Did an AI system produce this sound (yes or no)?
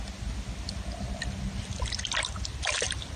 no